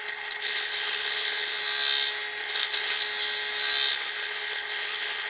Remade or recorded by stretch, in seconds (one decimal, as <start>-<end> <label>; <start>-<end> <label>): 0.0-1.6 remade; 1.6-2.4 recorded; 2.4-3.0 remade; 3.0-3.9 recorded; 3.9-5.3 remade